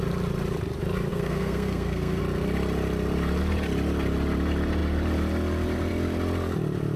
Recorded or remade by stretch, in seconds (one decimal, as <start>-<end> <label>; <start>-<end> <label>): 0.0-1.1 recorded; 1.1-2.2 remade; 2.2-7.0 recorded